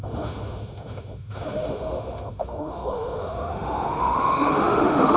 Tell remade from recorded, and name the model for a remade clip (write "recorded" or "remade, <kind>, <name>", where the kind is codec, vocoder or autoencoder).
remade, autoencoder, DAC-VAE